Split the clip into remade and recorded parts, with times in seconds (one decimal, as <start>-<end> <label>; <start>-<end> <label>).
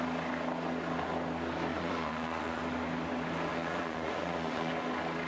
0.0-1.7 recorded; 1.7-2.6 remade; 2.6-3.5 recorded; 3.5-4.7 remade; 4.7-5.3 recorded